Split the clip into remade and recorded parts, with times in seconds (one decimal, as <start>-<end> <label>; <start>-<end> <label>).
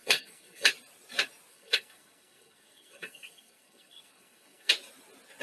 0.0-0.7 remade; 0.7-1.5 recorded; 1.5-4.7 remade; 4.7-5.4 recorded